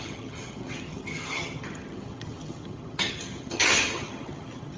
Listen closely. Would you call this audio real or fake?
fake